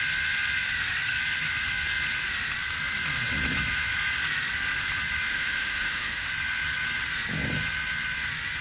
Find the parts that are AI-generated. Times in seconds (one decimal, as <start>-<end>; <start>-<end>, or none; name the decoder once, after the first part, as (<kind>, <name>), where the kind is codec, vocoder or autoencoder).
5.3-6.3 (autoencoder, DAC-VAE)